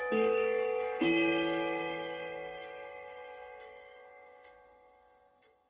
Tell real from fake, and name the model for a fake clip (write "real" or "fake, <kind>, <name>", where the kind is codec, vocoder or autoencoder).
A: fake, codec, DAC